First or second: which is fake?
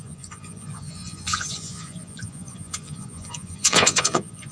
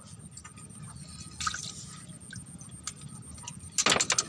first